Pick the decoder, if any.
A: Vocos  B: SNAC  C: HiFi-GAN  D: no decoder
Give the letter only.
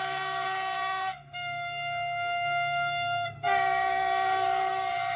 B